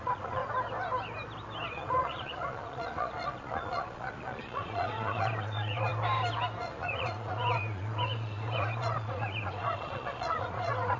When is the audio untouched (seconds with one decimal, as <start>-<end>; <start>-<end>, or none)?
0.4-1.7; 5.9-6.6